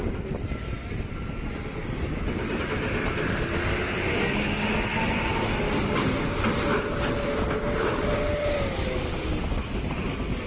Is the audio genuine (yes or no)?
yes